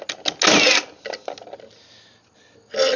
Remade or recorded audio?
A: recorded